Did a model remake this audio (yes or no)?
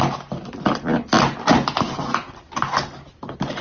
no